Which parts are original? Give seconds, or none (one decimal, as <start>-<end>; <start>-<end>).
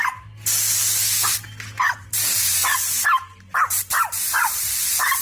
0.0-5.2